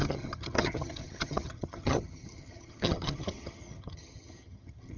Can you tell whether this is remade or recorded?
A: remade